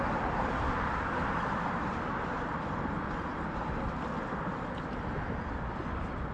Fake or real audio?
real